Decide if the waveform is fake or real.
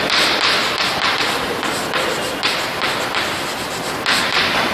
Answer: real